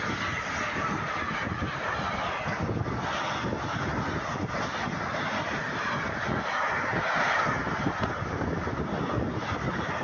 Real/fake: real